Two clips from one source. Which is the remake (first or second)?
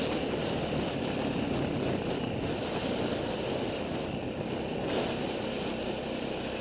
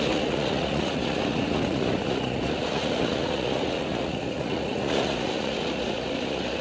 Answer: second